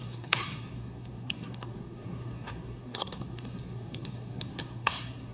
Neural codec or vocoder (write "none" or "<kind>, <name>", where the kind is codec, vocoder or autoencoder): codec, SNAC